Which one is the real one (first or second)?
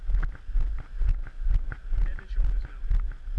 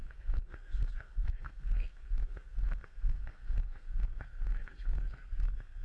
first